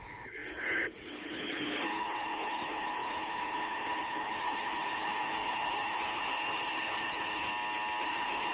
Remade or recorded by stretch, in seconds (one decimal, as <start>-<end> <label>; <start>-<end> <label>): 0.0-7.5 remade; 7.5-8.0 recorded; 8.0-8.5 remade